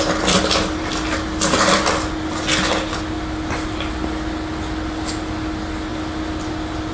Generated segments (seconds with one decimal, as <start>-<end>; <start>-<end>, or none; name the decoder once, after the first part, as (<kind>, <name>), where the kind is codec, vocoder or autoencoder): none